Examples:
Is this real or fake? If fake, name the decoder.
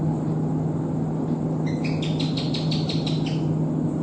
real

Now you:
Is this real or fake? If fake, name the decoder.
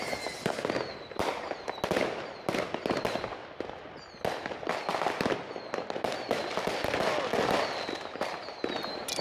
real